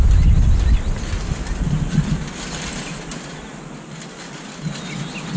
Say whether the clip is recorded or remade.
recorded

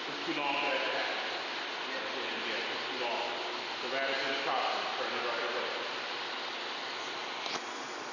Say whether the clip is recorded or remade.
recorded